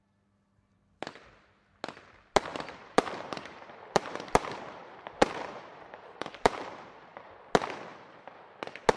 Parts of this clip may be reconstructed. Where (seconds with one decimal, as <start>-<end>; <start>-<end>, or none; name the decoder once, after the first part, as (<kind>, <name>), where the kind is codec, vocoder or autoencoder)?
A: 2.5-7.3 (vocoder, BigVGAN v2)